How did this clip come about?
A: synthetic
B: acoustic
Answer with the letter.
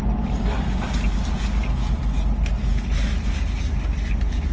B